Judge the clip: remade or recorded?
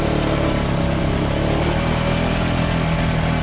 recorded